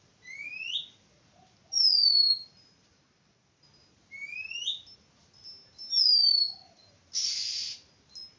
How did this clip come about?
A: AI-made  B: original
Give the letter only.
B